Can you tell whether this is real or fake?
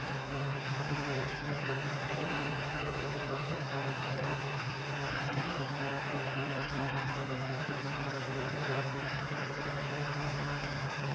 fake